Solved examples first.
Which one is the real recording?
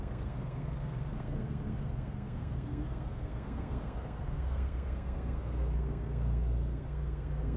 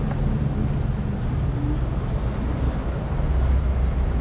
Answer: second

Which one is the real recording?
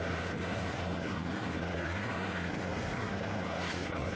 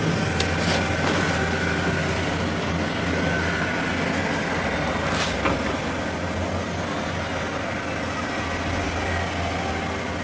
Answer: second